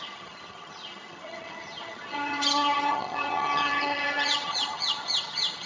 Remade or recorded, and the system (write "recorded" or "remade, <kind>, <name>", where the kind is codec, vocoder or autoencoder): remade, vocoder, HiFi-GAN